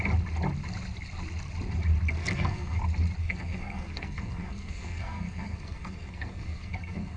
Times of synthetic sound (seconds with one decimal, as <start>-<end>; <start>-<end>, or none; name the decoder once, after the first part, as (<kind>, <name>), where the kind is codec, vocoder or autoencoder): 2.2-2.8 (codec, SNAC); 3.2-7.2